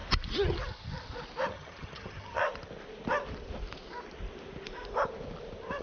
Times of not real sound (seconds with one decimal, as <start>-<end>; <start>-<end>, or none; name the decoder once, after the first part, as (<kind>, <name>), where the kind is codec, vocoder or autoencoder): 1.5-2.4 (vocoder, HiFi-GAN)